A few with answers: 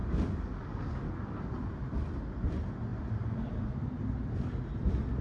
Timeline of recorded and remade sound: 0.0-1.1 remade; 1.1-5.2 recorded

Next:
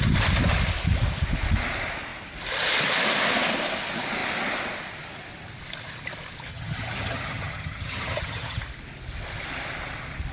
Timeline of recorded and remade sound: 0.0-6.5 recorded; 6.5-8.6 remade; 8.6-10.3 recorded

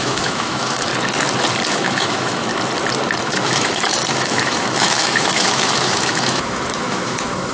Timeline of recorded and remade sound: 0.0-0.9 remade; 0.9-1.7 recorded; 1.7-2.5 remade; 2.5-3.2 recorded; 3.2-7.5 remade

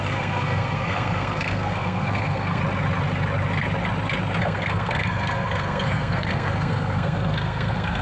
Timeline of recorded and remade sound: 0.0-2.6 remade; 2.6-4.4 recorded; 4.4-8.0 remade